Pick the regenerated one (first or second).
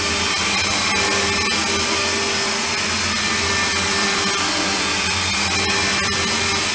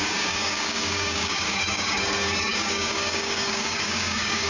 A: second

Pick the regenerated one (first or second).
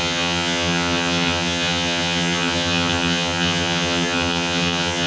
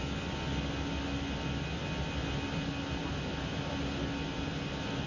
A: first